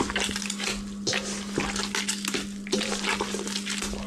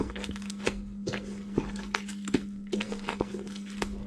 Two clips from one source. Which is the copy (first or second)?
second